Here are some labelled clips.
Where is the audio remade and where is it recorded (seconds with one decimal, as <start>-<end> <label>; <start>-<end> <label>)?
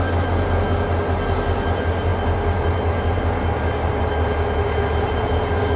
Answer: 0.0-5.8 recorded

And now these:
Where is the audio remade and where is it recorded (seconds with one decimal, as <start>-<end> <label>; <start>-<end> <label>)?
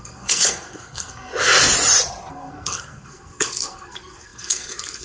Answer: 0.0-1.3 remade; 1.3-2.3 recorded; 2.3-5.0 remade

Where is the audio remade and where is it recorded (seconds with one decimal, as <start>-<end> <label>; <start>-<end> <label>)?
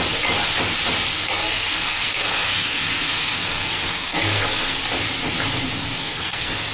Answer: 0.0-1.1 recorded; 1.1-4.8 remade; 4.8-5.8 recorded; 5.8-6.7 remade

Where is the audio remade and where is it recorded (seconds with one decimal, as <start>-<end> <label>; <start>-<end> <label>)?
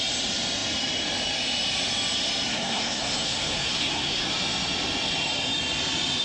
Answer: 0.0-2.5 recorded; 2.5-4.3 remade; 4.3-6.2 recorded